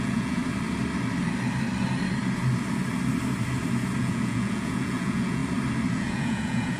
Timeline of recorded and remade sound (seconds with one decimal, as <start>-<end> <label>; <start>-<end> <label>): 0.0-0.4 remade; 0.4-4.0 recorded; 4.0-5.4 remade; 5.4-5.9 recorded; 5.9-6.8 remade